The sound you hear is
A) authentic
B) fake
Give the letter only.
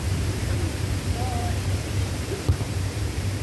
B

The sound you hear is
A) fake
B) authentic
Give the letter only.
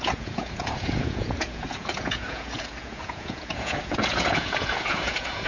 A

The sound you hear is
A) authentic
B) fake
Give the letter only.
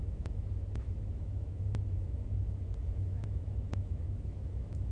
B